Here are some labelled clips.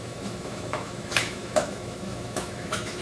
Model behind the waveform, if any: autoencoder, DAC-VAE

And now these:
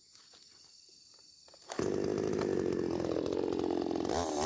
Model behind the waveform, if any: none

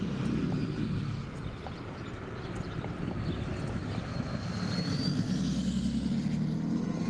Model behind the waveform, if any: none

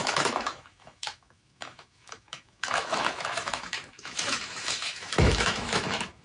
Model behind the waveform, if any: autoencoder, DAC-VAE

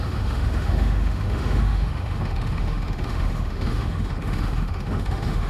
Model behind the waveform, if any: autoencoder, DAC-VAE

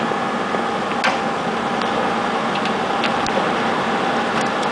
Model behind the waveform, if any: none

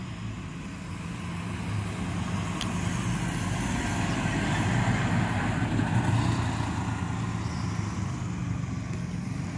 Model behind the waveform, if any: none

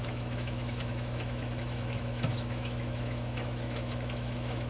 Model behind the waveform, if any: autoencoder, DAC-VAE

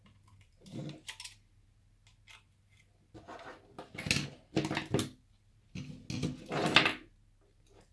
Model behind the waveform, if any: none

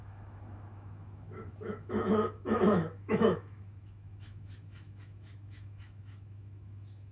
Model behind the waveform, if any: autoencoder, DAC-VAE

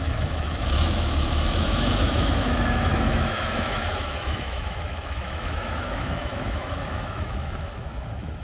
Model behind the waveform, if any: autoencoder, DAC-VAE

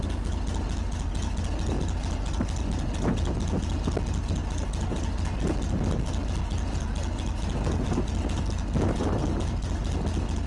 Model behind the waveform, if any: none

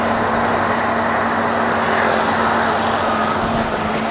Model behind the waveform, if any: none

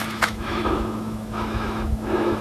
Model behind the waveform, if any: autoencoder, DAC-VAE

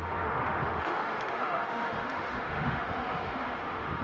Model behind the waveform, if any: autoencoder, DAC-VAE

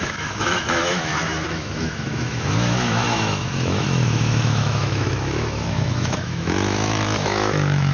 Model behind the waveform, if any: autoencoder, DAC-VAE